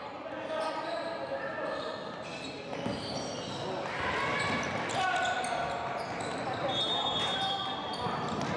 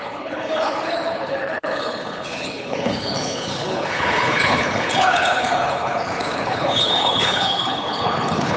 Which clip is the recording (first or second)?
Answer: first